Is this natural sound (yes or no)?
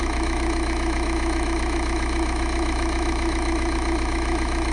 no